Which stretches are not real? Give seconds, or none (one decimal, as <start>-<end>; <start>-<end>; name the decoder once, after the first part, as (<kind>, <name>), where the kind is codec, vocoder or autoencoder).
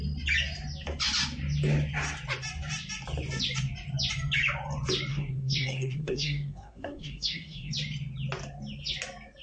5.1-7.7 (codec, SNAC)